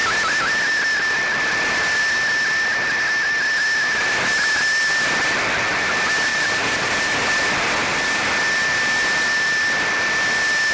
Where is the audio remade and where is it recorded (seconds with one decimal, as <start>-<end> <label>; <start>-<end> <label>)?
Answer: 0.0-6.3 recorded; 6.3-7.3 remade; 7.3-7.8 recorded; 7.8-8.3 remade; 8.3-10.7 recorded